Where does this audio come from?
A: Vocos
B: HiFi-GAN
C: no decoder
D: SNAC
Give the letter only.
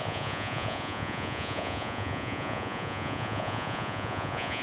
A